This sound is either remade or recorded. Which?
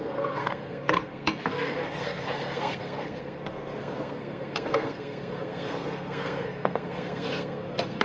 remade